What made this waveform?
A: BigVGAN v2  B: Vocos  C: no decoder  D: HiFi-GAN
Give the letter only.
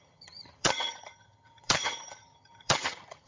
D